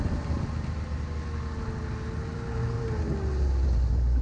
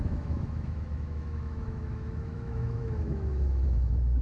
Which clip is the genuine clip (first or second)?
first